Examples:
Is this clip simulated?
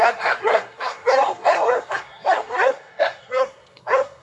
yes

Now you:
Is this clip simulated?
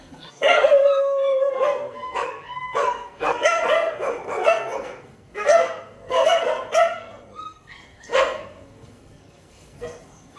yes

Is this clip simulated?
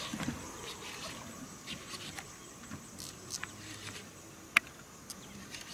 no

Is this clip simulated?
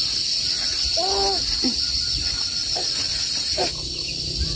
no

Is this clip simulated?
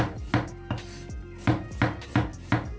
no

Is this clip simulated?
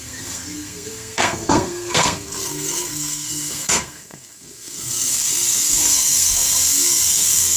yes